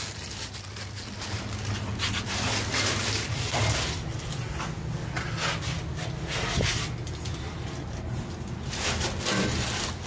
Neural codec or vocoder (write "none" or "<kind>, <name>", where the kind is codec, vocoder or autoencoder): none